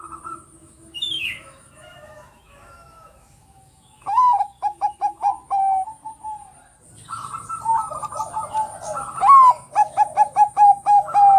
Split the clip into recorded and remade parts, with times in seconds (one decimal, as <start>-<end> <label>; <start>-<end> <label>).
0.0-0.6 recorded; 0.6-5.3 remade; 5.3-9.8 recorded; 9.8-11.4 remade